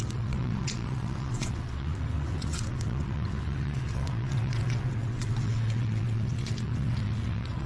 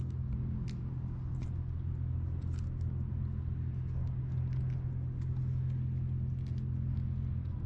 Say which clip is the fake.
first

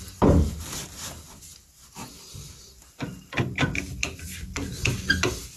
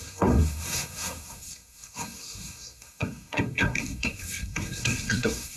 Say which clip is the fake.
second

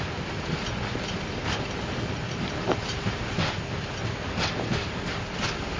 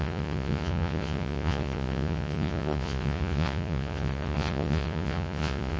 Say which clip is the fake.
second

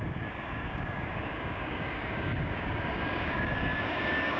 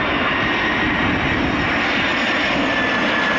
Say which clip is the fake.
first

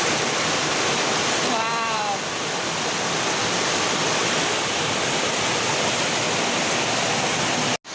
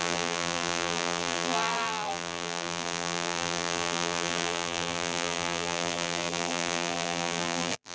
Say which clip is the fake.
second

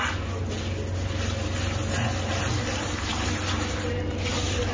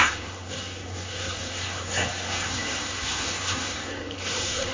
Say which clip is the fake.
second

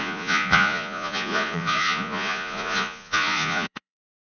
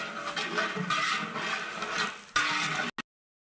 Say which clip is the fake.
first